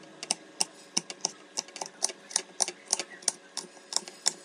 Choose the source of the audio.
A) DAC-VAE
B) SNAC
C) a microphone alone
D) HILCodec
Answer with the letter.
C